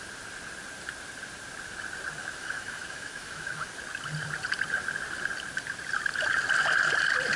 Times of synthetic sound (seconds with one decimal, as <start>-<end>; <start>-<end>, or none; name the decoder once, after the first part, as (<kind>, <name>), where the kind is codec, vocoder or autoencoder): 2.2-3.7 (autoencoder, DAC-VAE)